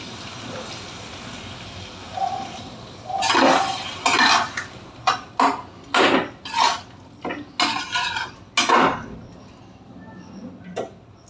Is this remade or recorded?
recorded